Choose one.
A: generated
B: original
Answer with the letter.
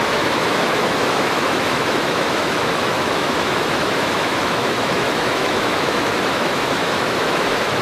A